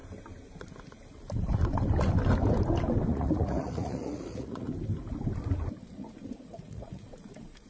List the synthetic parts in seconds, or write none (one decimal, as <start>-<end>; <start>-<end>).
3.1-4.7; 5.9-7.7

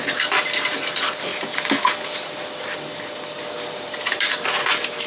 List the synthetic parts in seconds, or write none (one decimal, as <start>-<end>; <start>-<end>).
none

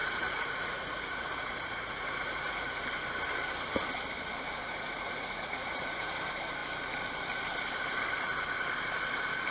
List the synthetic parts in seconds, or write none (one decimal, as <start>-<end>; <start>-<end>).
0.0-2.8; 4.6-6.1

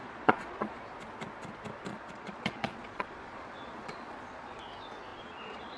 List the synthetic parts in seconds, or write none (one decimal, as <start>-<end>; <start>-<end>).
0.0-0.8; 1.9-4.6; 5.1-5.8

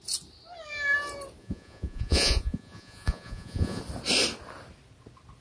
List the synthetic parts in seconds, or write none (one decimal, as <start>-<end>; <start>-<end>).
1.4-3.8

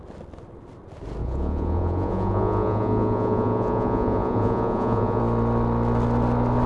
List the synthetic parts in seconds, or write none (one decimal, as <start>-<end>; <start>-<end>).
1.2-5.2